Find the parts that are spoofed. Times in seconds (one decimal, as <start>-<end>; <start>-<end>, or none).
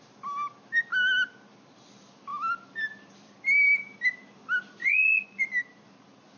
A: 4.8-5.4